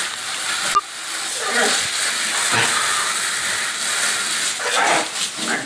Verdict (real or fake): real